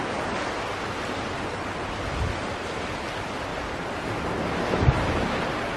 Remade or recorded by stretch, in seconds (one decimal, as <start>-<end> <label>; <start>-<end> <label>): 0.0-3.5 recorded; 3.5-4.1 remade; 4.1-5.8 recorded